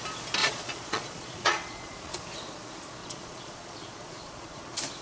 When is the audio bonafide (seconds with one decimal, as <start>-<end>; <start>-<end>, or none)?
0.0-0.4; 2.1-3.0; 4.6-5.0